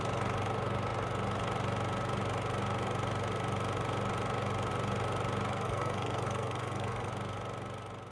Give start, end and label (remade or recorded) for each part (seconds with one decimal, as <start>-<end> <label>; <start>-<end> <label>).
0.0-5.5 recorded; 5.5-7.1 remade; 7.1-8.1 recorded